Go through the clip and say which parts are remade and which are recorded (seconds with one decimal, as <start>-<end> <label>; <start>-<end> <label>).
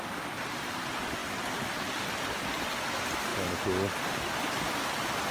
0.0-5.3 recorded